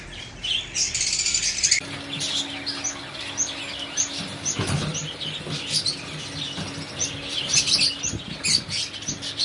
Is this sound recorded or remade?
recorded